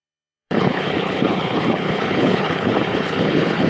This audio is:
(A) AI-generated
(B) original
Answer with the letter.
A